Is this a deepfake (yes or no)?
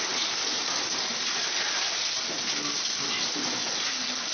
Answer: no